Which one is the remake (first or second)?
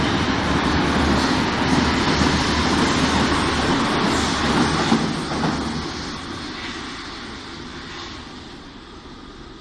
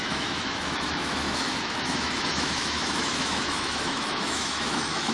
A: second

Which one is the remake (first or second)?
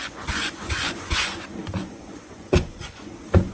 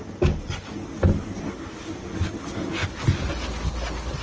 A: first